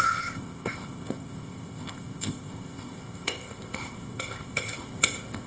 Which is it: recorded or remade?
remade